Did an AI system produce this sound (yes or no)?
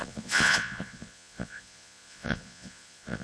yes